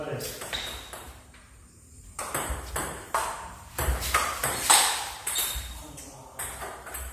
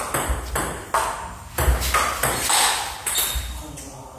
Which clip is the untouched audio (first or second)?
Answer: second